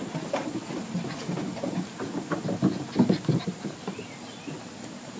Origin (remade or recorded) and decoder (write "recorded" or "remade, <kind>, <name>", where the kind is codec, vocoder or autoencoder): recorded